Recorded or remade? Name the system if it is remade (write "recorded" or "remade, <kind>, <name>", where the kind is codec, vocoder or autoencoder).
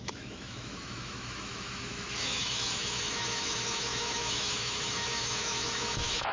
remade, autoencoder, DAC-VAE